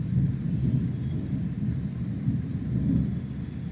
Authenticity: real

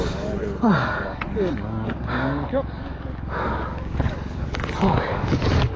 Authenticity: fake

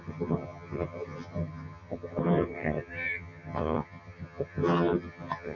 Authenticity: fake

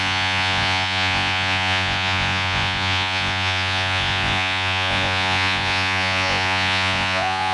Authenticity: fake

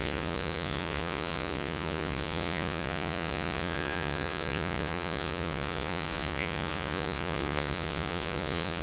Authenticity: fake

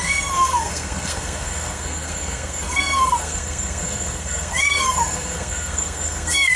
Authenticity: fake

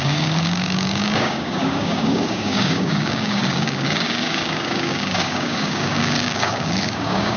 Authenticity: fake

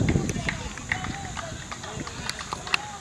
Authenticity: real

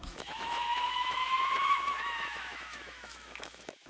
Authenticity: fake